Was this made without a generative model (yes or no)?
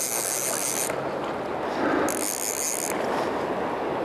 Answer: yes